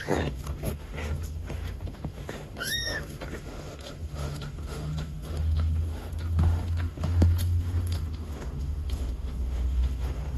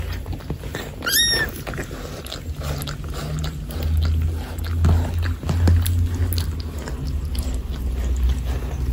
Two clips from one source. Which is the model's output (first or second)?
first